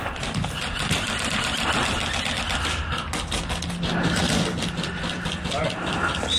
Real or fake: real